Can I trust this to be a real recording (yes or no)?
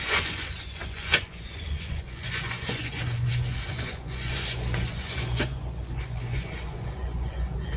no